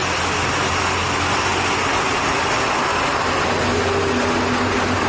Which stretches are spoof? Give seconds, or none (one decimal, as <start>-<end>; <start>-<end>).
1.5-2.5